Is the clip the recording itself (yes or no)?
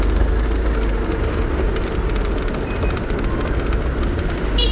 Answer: yes